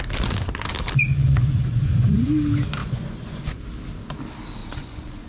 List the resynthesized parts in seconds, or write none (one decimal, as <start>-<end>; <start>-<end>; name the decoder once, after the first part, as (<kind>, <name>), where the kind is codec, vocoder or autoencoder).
1.1-2.3 (vocoder, Vocos); 2.8-3.6; 4.6-5.3